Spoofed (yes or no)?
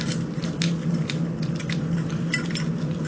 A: no